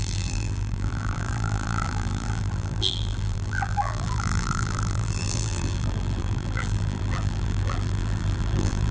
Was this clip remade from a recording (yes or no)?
yes